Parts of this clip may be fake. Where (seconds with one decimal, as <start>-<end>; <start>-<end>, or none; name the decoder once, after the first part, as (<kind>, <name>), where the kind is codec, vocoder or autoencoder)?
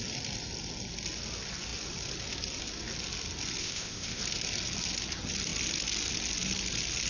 3.6-4.2 (codec, ZipCodec)